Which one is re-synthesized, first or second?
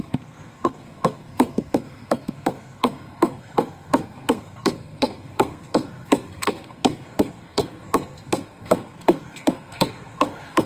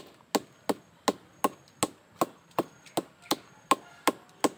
first